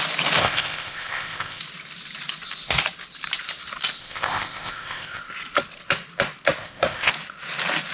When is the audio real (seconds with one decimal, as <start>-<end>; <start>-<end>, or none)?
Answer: 0.0-0.4; 1.6-4.0; 5.2-6.6; 7.1-7.9